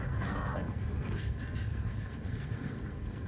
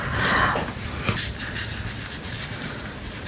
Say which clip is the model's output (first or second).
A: first